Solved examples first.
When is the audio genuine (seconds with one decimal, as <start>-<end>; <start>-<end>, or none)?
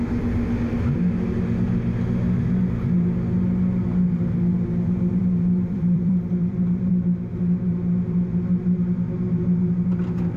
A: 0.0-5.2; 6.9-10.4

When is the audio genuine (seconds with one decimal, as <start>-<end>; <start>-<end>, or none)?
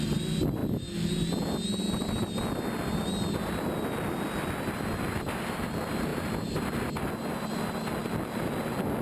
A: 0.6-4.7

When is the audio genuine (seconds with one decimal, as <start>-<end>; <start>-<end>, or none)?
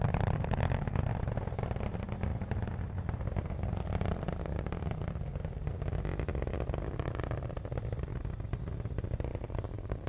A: 5.3-7.0; 8.1-8.9